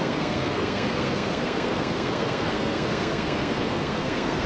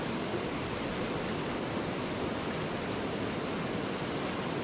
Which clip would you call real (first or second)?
second